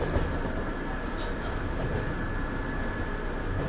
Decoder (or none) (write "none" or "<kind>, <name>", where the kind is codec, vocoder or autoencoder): none